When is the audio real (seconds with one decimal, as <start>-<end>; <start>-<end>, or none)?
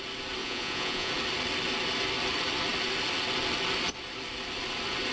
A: 0.0-0.4; 1.1-5.1